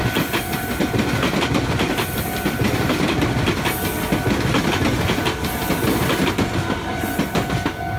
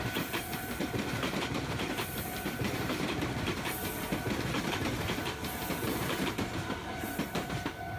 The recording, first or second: first